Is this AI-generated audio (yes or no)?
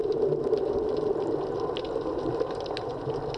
no